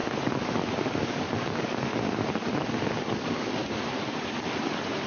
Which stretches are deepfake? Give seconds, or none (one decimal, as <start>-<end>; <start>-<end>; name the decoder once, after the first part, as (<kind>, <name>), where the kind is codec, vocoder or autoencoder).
0.8-1.9 (codec, DAC); 3.0-3.6

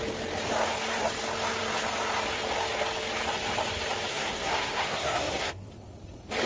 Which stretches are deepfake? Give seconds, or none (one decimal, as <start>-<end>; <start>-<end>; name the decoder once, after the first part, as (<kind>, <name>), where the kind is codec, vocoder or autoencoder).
4.1-5.7 (codec, SNAC)

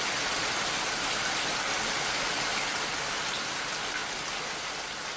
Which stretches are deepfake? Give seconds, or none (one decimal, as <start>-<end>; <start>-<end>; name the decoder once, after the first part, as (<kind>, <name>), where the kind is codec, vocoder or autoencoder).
none

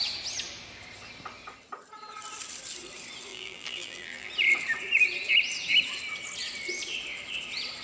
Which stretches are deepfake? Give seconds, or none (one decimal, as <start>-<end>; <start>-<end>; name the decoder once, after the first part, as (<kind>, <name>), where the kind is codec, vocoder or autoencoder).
3.3-4.3 (vocoder, BigVGAN v2)